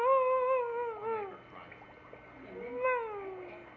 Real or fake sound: real